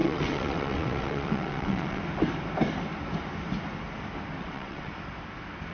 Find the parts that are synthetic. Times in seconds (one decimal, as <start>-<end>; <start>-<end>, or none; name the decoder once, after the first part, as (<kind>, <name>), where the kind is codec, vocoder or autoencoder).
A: 0.0-2.0 (vocoder, WaveNeXt); 4.4-4.9